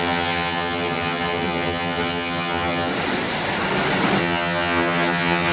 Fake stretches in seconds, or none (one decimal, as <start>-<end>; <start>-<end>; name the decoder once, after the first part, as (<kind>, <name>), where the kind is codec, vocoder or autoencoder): 0.0-2.9 (vocoder, HiFi-GAN); 4.2-5.5